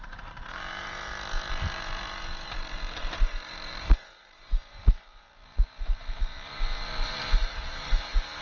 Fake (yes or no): yes